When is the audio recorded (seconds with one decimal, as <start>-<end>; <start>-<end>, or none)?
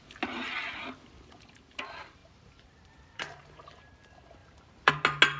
0.0-2.2; 3.9-4.4; 4.9-5.4